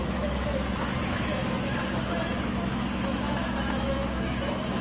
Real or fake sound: fake